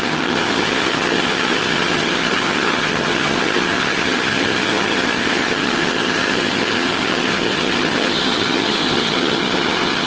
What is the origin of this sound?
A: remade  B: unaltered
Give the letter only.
A